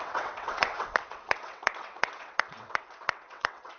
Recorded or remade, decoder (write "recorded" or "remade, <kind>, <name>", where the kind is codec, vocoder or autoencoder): remade, vocoder, WaveNeXt